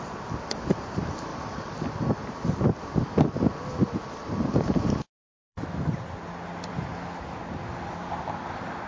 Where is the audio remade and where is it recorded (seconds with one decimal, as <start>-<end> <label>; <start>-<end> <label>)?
0.0-5.1 recorded; 5.1-5.9 remade; 5.9-8.9 recorded